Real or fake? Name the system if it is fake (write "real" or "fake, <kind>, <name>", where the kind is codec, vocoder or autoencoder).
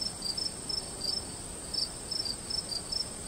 real